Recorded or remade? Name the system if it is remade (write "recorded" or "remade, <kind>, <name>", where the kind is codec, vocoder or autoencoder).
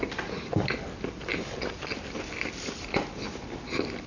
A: recorded